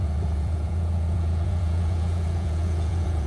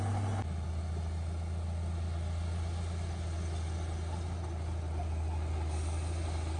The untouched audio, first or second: second